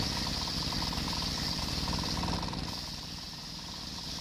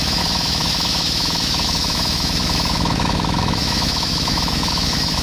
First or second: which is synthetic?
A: second